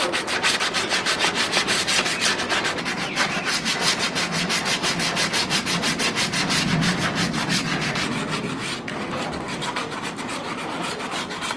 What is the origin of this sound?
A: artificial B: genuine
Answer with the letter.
B